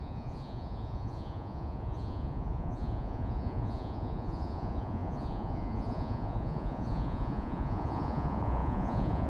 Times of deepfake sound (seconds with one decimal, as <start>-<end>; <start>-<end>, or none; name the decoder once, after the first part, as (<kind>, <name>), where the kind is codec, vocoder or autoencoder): 0.0-9.3 (vocoder, Vocos)